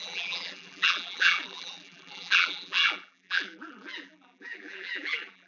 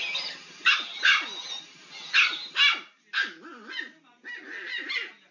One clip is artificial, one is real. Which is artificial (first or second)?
first